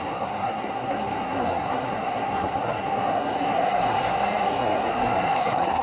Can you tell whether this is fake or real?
fake